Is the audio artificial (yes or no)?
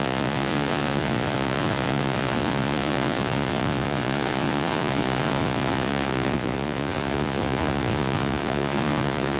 yes